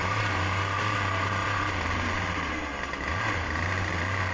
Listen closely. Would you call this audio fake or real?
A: fake